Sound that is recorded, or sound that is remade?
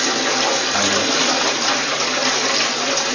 recorded